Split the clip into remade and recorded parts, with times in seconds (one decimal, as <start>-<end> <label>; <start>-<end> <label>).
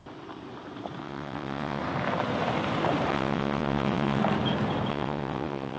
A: 0.0-1.0 recorded; 1.0-1.8 remade; 1.8-3.1 recorded; 3.1-4.2 remade; 4.2-4.9 recorded; 4.9-5.8 remade